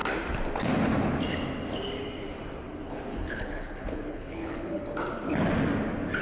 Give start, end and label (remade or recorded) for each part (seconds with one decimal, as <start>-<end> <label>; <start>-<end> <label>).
0.0-3.1 recorded; 3.1-4.8 remade; 4.8-6.2 recorded